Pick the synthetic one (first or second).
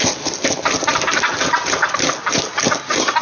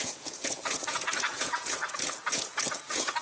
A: second